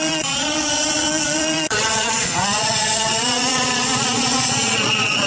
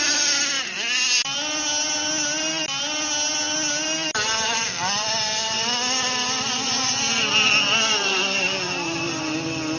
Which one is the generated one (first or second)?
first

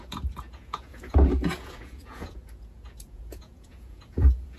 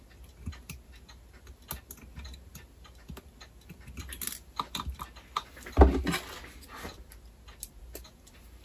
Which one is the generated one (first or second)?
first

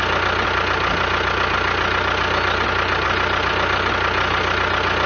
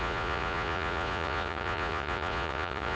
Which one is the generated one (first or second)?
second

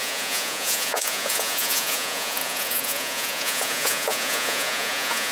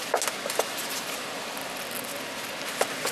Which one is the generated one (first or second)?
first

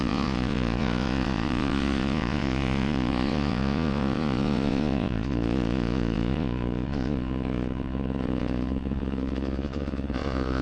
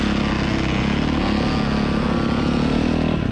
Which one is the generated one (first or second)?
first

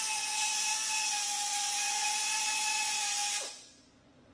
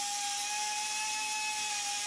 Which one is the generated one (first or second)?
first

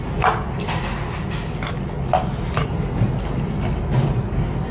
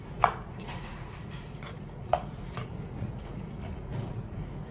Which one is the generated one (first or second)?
second